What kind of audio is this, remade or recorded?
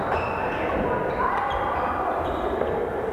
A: recorded